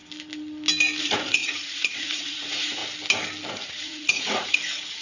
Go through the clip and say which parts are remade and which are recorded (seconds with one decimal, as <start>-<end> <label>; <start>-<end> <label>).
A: 0.0-1.0 recorded; 1.0-2.8 remade; 2.8-3.5 recorded; 3.5-5.0 remade